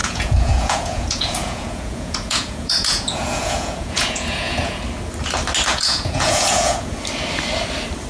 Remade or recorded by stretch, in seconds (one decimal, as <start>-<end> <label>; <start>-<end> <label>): 0.0-4.8 remade; 4.8-5.7 recorded; 5.7-6.9 remade; 6.9-8.1 recorded